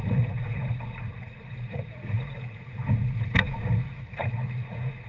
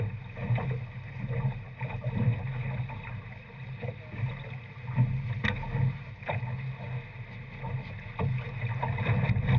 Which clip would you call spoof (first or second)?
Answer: first